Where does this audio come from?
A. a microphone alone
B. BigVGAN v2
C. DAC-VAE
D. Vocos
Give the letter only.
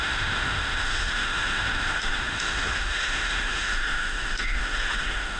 C